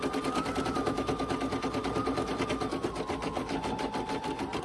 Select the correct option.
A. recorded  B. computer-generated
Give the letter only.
A